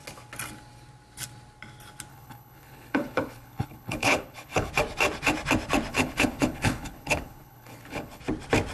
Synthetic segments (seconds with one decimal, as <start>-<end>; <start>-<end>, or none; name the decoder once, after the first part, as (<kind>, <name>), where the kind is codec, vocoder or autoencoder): 2.1-4.7 (codec, HILCodec); 5.9-8.2